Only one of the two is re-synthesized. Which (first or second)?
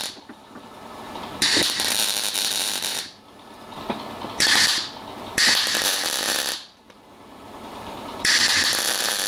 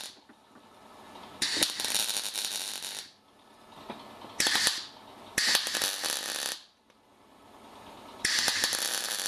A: first